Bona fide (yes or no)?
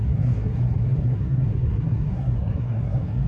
no